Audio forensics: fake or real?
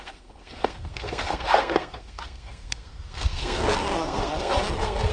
fake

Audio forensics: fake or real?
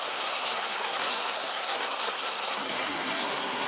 fake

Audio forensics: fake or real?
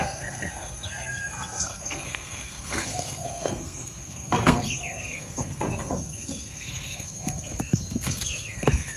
fake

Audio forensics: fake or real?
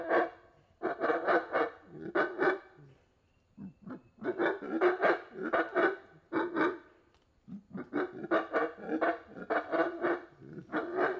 real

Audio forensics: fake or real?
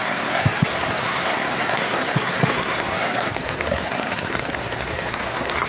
fake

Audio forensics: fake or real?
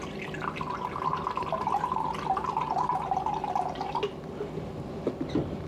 real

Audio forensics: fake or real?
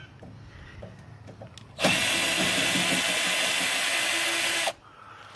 real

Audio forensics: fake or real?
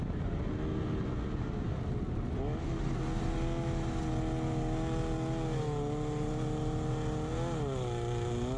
real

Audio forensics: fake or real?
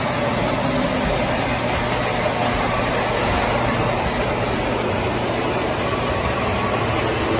real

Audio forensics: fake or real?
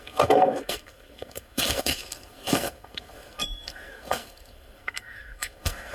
fake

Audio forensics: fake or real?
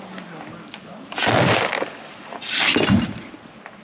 real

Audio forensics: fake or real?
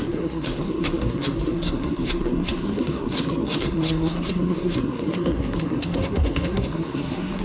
fake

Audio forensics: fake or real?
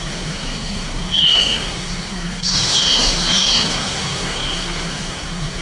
fake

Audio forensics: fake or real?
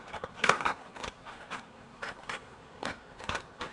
fake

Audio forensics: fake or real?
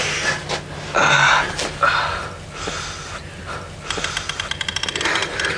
real